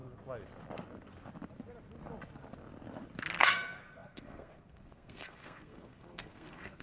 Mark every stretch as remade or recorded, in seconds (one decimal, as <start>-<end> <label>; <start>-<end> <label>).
0.0-3.4 recorded; 3.4-6.8 remade